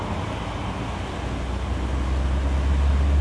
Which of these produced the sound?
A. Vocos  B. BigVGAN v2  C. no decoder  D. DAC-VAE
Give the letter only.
C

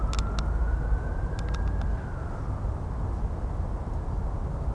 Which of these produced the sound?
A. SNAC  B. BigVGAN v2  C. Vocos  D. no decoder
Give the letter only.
D